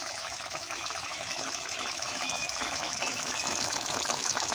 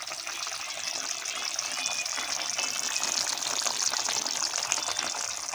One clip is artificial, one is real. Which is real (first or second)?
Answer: second